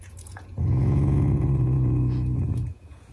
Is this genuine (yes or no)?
no